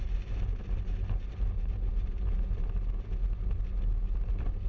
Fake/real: real